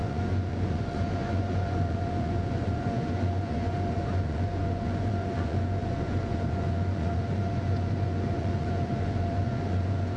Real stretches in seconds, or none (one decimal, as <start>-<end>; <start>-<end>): none